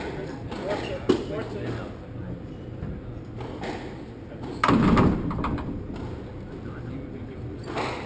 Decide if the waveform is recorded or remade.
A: recorded